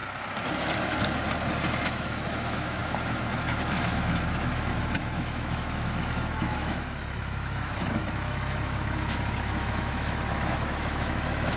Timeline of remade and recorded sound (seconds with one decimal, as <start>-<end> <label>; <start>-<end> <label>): 0.0-1.8 recorded; 1.8-11.6 remade